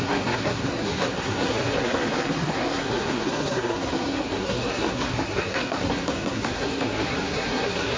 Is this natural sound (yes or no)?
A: no